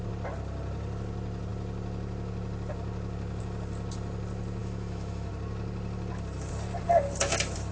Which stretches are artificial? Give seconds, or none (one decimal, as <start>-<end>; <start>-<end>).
4.6-5.3